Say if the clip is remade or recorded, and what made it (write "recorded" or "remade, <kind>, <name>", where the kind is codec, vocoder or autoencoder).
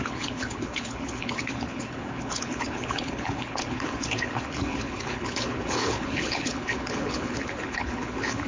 remade, codec, HILCodec